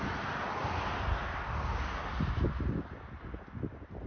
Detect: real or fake real